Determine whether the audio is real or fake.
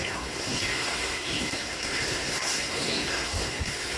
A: fake